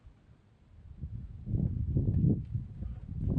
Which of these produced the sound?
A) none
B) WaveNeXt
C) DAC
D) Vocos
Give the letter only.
A